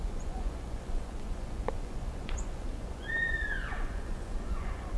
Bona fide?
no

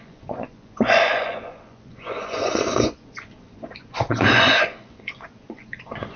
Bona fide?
no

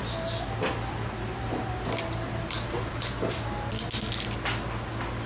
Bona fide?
yes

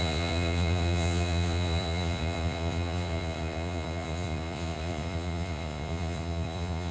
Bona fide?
no